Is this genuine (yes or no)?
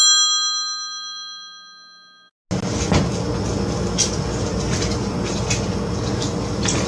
yes